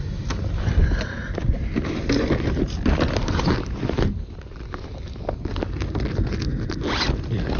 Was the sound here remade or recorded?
recorded